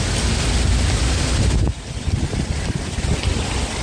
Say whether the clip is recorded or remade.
recorded